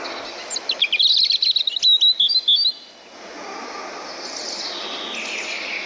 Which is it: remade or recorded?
recorded